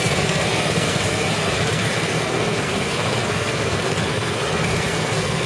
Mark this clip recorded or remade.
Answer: remade